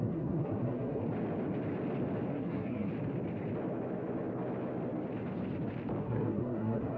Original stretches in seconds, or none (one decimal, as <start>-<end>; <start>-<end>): 1.0-2.3; 2.9-6.0